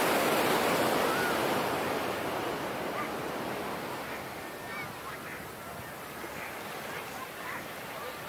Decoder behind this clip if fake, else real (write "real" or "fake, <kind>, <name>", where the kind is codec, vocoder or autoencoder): real